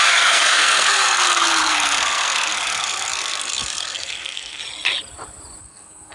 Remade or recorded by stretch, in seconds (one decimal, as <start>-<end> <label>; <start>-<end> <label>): 0.0-4.6 remade; 4.6-5.6 recorded; 5.6-6.1 remade